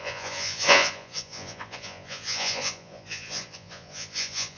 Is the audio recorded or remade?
remade